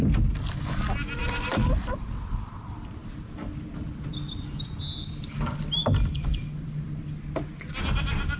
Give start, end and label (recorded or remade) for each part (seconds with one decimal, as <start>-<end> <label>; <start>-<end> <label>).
0.0-1.2 recorded; 1.2-1.8 remade; 1.8-5.8 recorded; 5.8-7.1 remade; 7.1-8.4 recorded